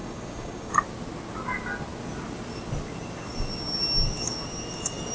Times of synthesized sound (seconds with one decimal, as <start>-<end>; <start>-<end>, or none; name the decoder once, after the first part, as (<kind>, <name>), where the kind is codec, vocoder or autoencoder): 0.0-0.7 (codec, DAC)